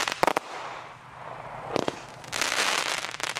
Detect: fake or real real